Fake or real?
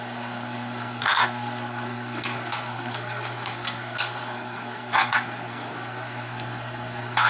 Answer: fake